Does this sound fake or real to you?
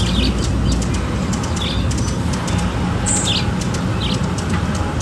real